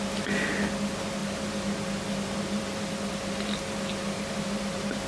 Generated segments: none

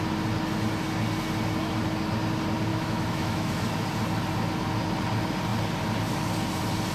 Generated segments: 2.7-3.5